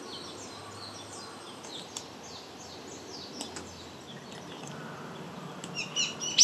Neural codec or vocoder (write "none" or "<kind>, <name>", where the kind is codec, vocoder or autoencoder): none